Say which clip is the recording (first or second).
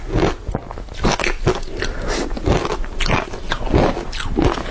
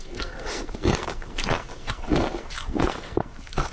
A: first